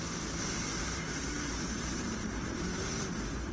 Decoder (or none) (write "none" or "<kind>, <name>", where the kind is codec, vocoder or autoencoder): vocoder, BigVGAN v2